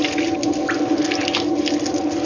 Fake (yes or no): no